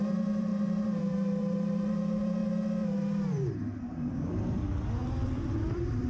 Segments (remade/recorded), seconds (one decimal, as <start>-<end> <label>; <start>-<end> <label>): 0.0-2.4 remade; 2.4-3.8 recorded; 3.8-6.1 remade